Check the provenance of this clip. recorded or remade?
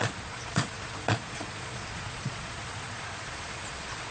remade